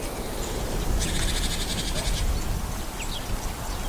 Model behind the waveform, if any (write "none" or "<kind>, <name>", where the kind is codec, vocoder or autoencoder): none